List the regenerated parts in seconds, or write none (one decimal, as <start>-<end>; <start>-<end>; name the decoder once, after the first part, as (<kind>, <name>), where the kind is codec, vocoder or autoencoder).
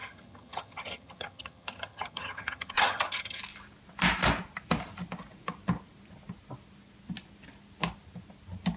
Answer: 0.0-3.4 (vocoder, HiFi-GAN)